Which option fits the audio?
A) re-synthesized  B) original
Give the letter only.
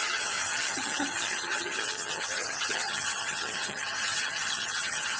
A